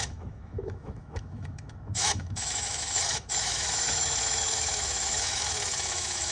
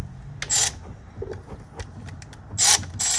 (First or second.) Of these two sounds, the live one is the second